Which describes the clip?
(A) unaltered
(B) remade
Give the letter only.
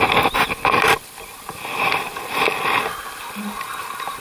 A